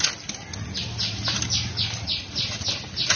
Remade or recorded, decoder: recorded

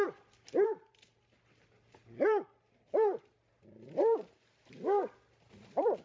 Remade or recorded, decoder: remade, vocoder, BigVGAN v2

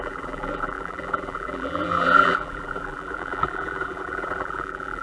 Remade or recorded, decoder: remade, vocoder, BigVGAN v2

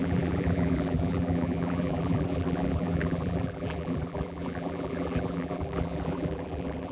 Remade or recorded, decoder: remade, vocoder, BigVGAN v2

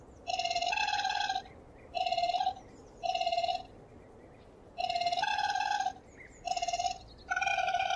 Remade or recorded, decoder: recorded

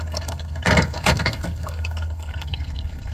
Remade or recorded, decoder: remade, codec, SNAC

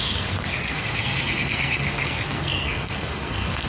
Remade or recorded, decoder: remade, codec, SNAC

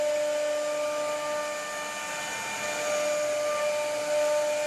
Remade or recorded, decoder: recorded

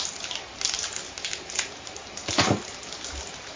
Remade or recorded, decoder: recorded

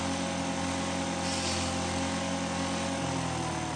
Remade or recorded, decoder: recorded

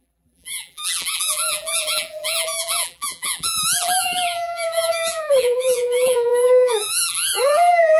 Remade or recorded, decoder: remade, vocoder, BigVGAN v2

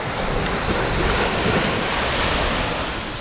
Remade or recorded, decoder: recorded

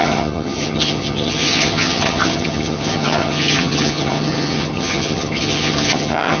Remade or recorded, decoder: remade, vocoder, HiFi-GAN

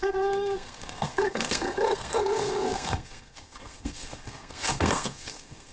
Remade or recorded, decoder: remade, codec, SNAC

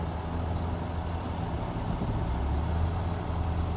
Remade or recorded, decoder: recorded